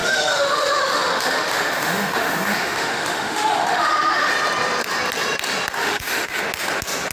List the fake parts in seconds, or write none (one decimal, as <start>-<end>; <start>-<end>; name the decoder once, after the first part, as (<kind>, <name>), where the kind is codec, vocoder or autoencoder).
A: 0.0-4.3 (autoencoder, DAC-VAE); 5.8-6.4